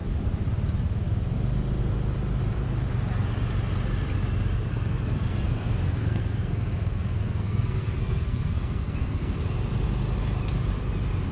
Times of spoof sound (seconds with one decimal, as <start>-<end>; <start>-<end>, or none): 4.7-9.4